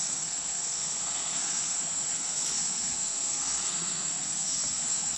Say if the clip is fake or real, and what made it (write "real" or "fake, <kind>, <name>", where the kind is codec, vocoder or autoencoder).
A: fake, codec, SNAC